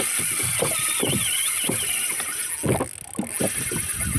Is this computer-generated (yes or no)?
no